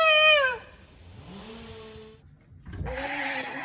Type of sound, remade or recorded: recorded